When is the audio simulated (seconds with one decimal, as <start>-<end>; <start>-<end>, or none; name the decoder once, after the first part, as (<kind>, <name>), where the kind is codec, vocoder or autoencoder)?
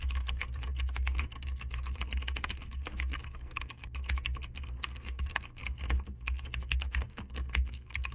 0.0-8.1 (codec, SNAC)